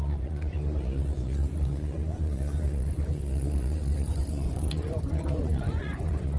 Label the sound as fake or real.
fake